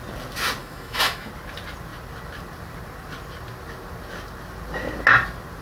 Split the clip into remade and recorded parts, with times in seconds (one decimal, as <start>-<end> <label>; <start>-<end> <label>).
0.0-0.6 recorded; 0.6-1.3 remade; 1.3-5.6 recorded